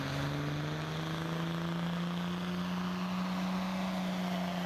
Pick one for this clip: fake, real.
real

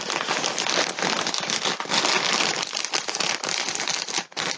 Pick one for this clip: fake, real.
real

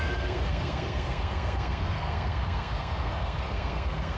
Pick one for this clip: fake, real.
fake